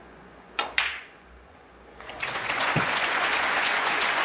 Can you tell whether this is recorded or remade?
remade